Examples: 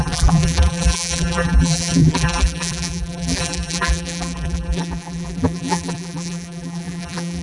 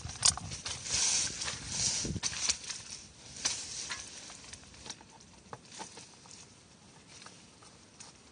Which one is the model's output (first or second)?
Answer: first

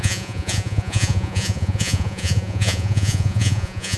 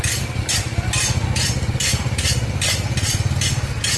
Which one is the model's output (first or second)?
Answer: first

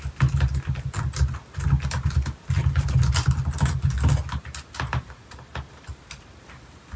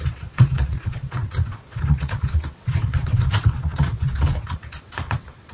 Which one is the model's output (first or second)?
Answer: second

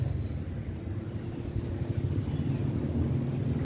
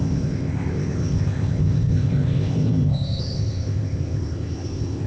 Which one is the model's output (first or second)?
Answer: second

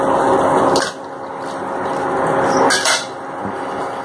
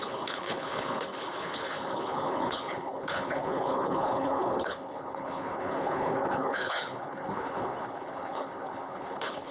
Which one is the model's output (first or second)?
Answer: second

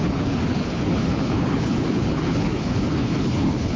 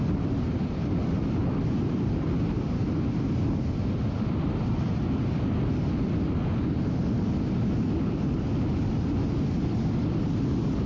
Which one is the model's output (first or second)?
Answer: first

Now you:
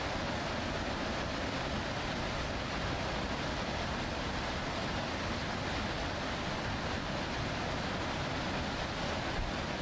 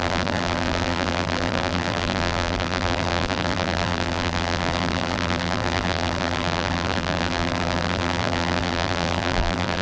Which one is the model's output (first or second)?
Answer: second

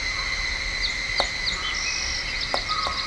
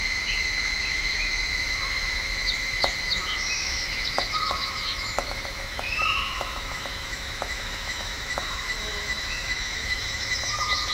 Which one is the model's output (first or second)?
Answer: second